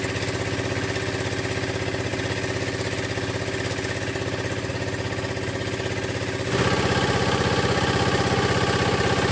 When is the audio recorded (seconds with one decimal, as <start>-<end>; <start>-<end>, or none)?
0.0-9.3